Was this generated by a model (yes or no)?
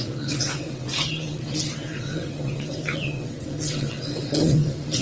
yes